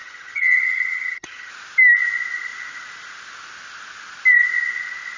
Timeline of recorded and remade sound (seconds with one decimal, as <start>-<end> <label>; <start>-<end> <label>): 0.0-1.5 remade; 1.5-5.2 recorded

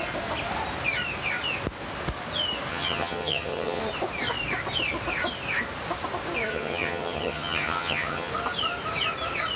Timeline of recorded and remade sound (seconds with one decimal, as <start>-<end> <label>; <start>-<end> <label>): 0.0-2.7 recorded; 2.7-3.8 remade; 3.8-6.5 recorded; 6.5-8.3 remade; 8.3-9.6 recorded

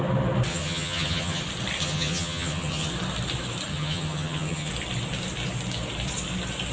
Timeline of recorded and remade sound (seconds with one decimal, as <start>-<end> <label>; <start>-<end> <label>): 0.0-0.5 recorded; 0.5-1.4 remade; 1.4-1.8 recorded; 1.8-2.9 remade; 2.9-3.7 recorded; 3.7-4.7 remade; 4.7-6.7 recorded